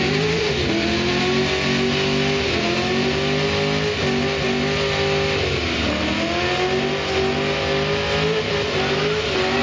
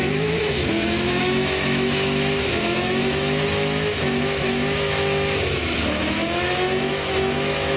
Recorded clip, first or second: first